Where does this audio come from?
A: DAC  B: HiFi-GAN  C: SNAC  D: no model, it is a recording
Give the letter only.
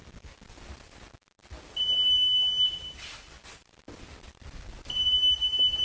D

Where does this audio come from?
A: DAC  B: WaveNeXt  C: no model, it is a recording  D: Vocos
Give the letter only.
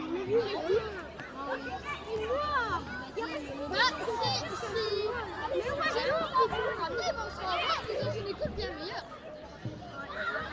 C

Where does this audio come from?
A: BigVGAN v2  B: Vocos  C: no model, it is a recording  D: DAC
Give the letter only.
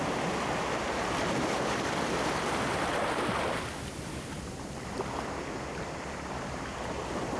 C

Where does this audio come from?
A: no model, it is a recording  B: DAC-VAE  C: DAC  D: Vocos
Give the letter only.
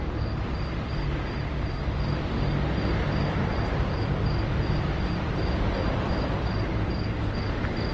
A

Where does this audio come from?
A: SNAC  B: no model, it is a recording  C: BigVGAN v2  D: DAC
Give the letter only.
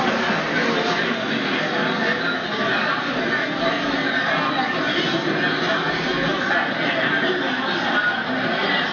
B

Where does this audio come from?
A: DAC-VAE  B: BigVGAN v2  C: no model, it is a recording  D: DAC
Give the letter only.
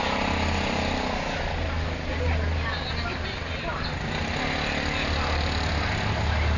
C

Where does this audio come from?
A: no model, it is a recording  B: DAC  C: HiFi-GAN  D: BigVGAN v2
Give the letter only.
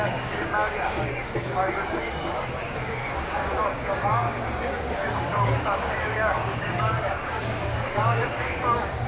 B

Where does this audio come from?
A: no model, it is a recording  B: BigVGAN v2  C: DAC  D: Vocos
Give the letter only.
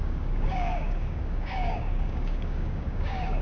C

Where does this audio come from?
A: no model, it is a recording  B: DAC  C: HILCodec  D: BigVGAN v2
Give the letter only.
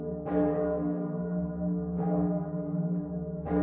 B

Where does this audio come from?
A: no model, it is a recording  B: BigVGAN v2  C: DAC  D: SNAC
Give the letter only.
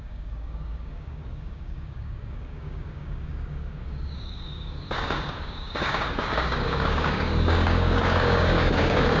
C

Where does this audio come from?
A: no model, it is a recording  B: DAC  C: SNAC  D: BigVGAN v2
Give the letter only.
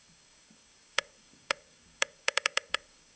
B